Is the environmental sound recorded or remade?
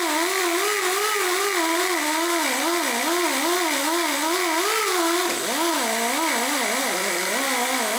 recorded